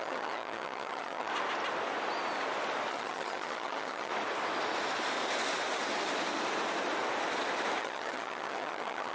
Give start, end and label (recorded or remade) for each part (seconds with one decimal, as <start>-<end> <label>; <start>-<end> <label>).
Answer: 0.0-1.3 remade; 1.3-2.9 recorded; 2.9-4.1 remade; 4.1-7.8 recorded; 7.8-9.1 remade